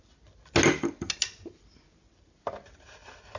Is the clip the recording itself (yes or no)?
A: yes